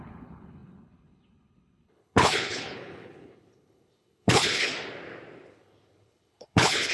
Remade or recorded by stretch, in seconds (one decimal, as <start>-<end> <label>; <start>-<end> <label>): 0.0-4.7 remade; 4.7-5.5 recorded; 5.5-6.9 remade